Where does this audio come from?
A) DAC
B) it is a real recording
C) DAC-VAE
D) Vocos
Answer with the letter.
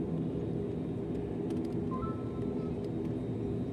B